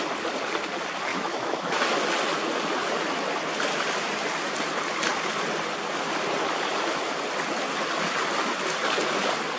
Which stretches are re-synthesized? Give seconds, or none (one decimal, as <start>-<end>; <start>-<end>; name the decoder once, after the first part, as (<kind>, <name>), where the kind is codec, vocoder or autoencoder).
1.1-1.8 (autoencoder, DAC-VAE)